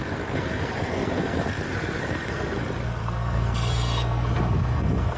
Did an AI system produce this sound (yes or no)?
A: yes